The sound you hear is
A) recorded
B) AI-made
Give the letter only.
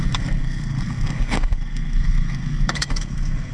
B